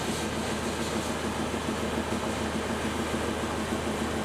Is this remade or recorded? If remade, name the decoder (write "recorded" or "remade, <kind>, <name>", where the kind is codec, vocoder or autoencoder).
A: recorded